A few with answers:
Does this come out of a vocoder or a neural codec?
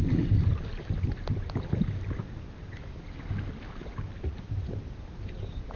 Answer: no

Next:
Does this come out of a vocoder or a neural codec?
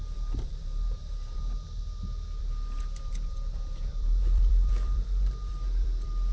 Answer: yes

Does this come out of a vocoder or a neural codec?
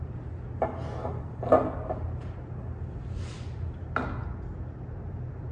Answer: no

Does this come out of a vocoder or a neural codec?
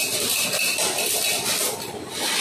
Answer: no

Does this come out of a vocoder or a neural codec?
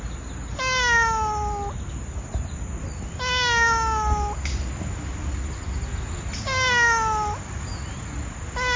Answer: no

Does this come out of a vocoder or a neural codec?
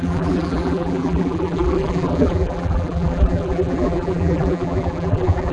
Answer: yes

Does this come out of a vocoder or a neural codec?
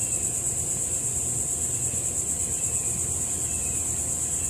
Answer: no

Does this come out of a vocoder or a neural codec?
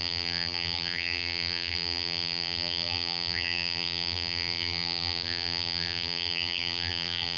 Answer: yes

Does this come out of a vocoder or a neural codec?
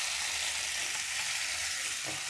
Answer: no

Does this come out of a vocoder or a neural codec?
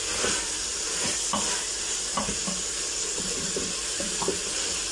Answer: no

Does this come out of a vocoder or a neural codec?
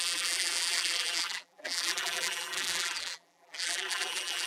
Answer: yes